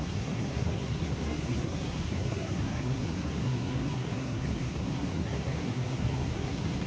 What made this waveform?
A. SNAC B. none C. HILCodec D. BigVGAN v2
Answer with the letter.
A